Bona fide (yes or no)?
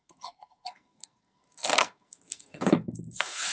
no